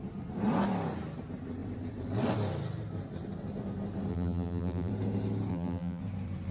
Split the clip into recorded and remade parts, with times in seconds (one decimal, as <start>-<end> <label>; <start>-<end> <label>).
0.0-4.1 recorded; 4.1-4.9 remade; 4.9-5.5 recorded; 5.5-6.0 remade; 6.0-6.5 recorded